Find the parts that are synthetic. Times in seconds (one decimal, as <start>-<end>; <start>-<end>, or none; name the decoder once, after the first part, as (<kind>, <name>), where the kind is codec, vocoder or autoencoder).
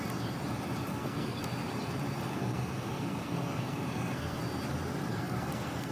0.9-1.4 (codec, SNAC); 2.3-4.4; 5.1-5.9